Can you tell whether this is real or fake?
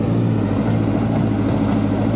real